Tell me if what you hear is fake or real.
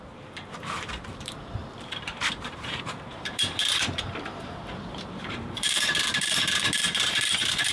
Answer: fake